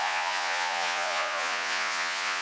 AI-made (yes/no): yes